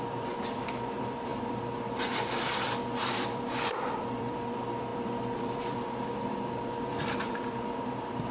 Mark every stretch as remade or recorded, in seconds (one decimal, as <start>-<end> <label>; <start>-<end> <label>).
0.0-8.3 remade